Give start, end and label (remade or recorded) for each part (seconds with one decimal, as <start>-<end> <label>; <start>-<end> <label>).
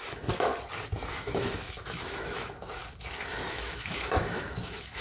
0.0-0.5 remade; 0.5-1.1 recorded; 1.1-2.8 remade; 2.8-3.5 recorded; 3.5-5.0 remade